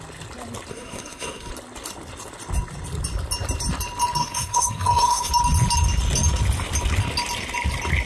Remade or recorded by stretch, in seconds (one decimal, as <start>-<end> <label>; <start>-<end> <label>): 0.0-0.7 recorded; 0.7-1.5 remade; 1.5-4.2 recorded; 4.2-5.3 remade; 5.3-8.1 recorded